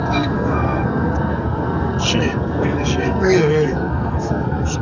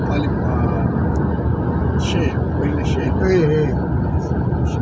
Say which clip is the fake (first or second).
first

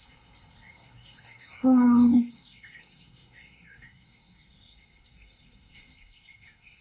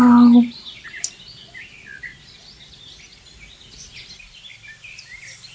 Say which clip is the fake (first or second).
first